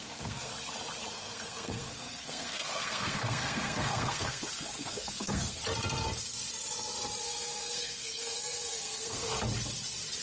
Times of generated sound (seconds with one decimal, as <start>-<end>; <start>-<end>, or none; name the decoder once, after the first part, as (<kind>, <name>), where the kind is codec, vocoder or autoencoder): 0.0-0.5 (codec, SNAC); 1.1-5.6; 7.2-9.3